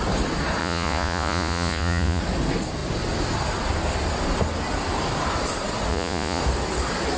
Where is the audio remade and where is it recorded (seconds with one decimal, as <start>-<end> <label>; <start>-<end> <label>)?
0.0-0.6 recorded; 0.6-2.2 remade; 2.2-5.9 recorded; 5.9-6.4 remade; 6.4-7.2 recorded